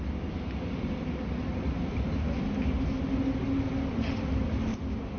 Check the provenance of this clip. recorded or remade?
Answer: recorded